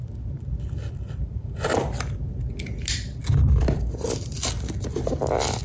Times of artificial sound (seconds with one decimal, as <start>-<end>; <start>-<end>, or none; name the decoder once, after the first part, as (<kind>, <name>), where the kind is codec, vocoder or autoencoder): none